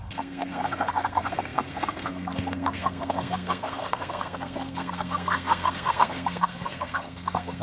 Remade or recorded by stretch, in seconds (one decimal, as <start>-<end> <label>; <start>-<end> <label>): 0.0-7.6 remade